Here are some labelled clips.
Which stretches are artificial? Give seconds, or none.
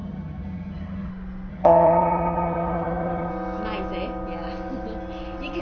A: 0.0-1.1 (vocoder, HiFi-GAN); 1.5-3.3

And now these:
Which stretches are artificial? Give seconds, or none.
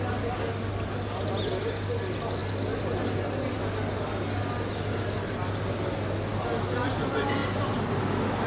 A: none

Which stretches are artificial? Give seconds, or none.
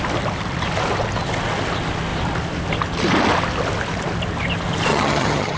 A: 4.9-5.6 (vocoder, HiFi-GAN)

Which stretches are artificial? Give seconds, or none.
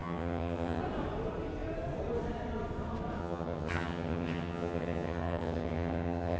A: 0.0-0.8 (vocoder, HiFi-GAN); 3.2-6.4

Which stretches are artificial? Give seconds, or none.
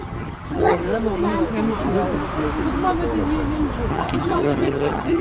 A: 0.0-0.8 (vocoder, HiFi-GAN); 3.9-5.2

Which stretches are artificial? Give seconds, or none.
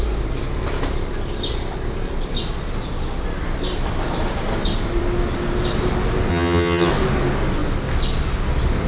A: 6.3-6.9 (vocoder, HiFi-GAN)